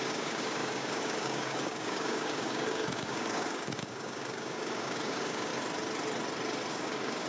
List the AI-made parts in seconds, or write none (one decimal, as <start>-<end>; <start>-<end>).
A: 0.0-5.5; 6.7-7.3